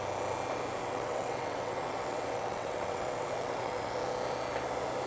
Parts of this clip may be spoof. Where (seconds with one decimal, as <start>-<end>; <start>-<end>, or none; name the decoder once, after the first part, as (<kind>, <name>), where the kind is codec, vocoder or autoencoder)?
0.8-3.9 (vocoder, WaveNeXt)